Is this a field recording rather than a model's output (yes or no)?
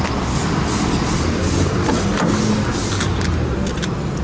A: yes